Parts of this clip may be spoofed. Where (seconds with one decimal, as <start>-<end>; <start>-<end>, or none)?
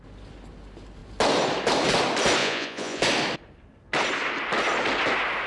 2.4-3.0